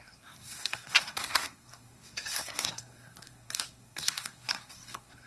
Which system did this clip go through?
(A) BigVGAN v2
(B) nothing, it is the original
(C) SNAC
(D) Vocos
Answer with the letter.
C